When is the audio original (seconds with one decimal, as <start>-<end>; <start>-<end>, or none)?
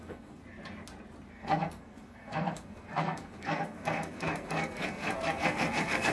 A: 0.4-1.3